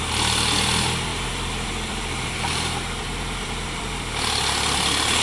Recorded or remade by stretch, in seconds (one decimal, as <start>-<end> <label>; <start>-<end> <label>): 0.0-1.1 recorded; 1.1-4.2 remade; 4.2-5.2 recorded